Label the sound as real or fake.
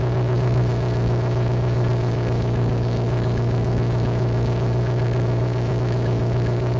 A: fake